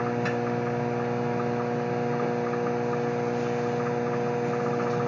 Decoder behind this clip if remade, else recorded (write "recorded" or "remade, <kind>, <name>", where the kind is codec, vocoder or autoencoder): recorded